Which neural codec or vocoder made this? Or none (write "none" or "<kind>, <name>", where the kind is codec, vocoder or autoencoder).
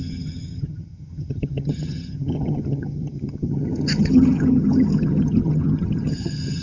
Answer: vocoder, HiFi-GAN